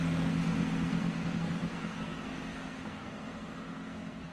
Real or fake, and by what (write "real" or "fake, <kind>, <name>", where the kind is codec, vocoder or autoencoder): fake, codec, SNAC